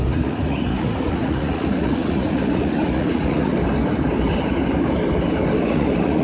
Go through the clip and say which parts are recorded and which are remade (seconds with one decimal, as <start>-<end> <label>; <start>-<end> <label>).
0.0-3.5 remade; 3.5-5.6 recorded; 5.6-6.2 remade